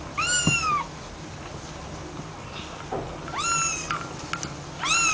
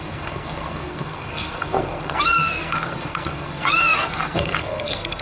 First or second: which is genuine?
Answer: first